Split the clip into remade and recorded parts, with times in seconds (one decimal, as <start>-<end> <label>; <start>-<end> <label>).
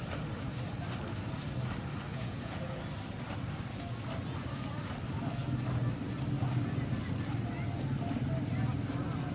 0.0-2.1 recorded; 2.1-2.8 remade; 2.8-9.3 recorded